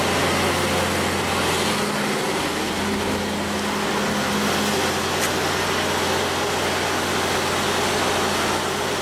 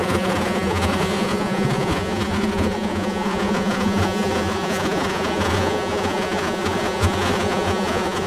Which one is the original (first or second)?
first